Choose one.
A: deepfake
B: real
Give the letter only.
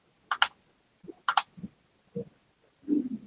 B